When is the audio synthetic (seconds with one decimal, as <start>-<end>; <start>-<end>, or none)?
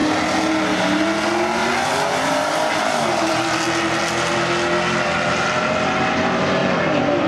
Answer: 1.6-2.7; 6.6-7.3